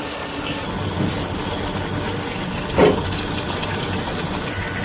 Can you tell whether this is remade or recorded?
recorded